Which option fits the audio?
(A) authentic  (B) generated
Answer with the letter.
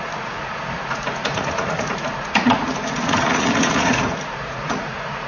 B